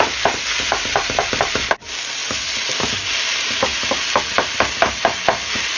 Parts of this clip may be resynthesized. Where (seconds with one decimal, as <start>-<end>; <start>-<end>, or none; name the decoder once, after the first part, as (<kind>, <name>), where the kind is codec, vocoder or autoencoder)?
none